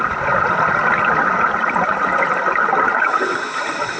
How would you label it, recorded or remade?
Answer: recorded